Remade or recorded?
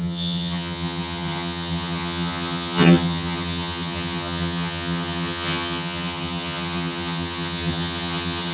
remade